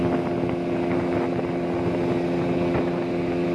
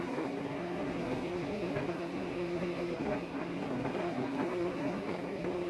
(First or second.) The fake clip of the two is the second